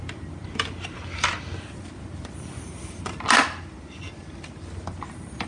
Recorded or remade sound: recorded